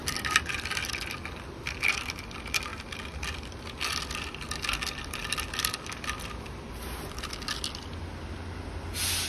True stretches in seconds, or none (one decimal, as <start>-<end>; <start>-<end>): 0.9-9.3